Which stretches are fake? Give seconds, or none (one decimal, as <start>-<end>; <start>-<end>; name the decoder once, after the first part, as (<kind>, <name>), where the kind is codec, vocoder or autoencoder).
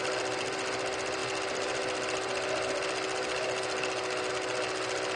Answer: none